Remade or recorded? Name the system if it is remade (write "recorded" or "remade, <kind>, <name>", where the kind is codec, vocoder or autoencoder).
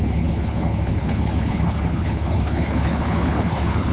remade, codec, HILCodec